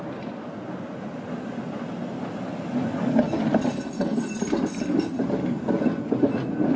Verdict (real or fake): real